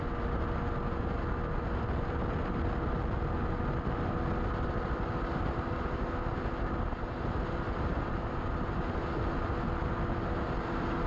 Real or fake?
real